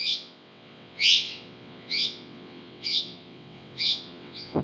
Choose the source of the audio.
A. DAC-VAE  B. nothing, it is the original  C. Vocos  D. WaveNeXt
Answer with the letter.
D